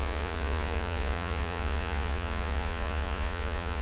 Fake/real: fake